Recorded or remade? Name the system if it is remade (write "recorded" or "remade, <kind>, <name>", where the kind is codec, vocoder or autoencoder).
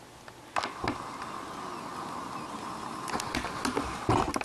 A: recorded